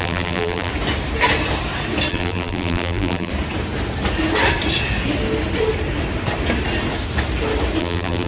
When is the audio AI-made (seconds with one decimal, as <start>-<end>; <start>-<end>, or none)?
0.0-0.7; 2.1-3.3; 7.8-8.3